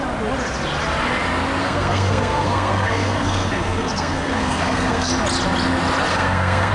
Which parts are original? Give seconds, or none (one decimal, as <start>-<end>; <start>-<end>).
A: 0.0-1.6; 5.1-6.1